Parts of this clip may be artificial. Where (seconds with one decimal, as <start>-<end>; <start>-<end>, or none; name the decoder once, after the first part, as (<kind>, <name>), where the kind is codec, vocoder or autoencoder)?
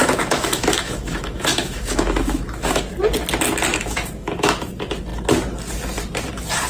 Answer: 0.0-2.8 (autoencoder, DAC-VAE); 3.7-4.6